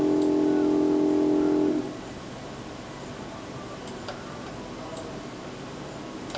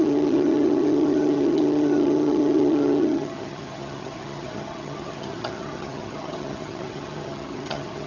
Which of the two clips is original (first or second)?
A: first